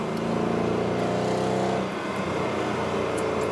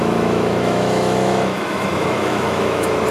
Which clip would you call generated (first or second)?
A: second